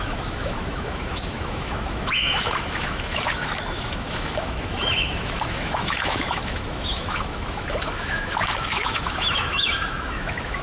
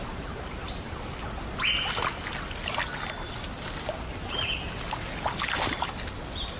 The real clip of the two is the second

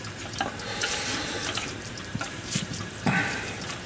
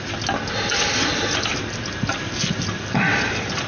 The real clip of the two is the second